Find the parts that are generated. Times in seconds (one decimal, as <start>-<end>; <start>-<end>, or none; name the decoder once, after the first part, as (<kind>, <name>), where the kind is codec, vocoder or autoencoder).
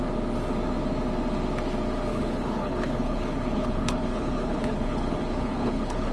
2.1-6.1 (codec, HILCodec)